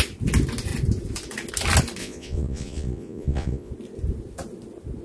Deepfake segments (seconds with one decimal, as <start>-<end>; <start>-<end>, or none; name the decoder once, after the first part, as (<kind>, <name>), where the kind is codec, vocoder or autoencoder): 2.0-3.7 (vocoder, Vocos)